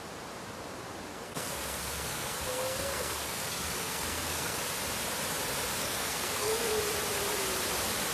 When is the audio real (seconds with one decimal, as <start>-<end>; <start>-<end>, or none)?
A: 0.0-1.1; 4.6-5.8; 6.8-8.1